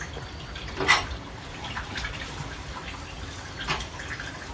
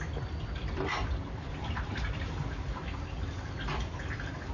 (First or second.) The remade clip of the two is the first